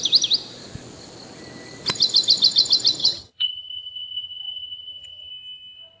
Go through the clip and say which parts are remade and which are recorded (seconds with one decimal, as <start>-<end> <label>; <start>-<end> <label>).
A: 0.0-3.0 recorded; 3.0-5.3 remade; 5.3-6.0 recorded